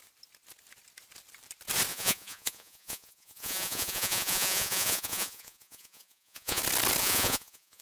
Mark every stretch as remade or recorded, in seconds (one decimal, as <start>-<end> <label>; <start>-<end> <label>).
0.0-1.9 recorded; 1.9-6.6 remade; 6.6-7.0 recorded; 7.0-7.8 remade